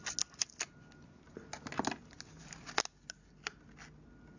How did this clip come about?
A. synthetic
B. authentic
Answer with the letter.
B